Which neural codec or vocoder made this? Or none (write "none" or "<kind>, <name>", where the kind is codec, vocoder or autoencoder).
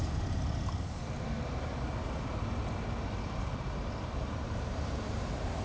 none